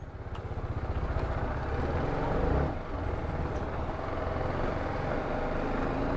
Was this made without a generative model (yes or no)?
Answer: yes